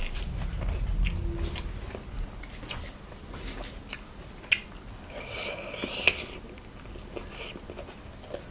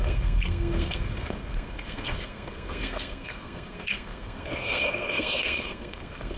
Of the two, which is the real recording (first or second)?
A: first